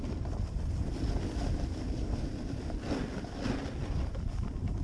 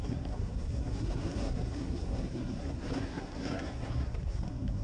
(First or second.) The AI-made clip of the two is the second